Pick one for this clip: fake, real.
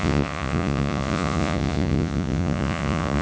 fake